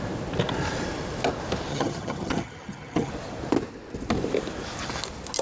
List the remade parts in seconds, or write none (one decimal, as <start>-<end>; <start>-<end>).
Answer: 1.7-3.1